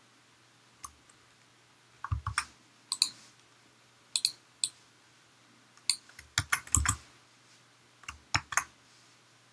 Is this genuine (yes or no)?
yes